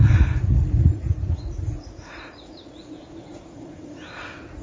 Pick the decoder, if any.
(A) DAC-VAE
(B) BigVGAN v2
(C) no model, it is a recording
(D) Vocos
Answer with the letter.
D